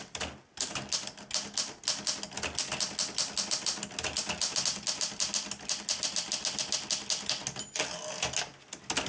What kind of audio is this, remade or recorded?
recorded